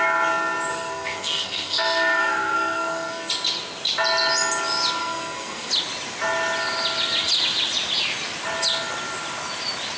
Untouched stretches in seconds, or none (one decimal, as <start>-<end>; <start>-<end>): 0.0-0.7; 3.3-5.0; 5.7-10.0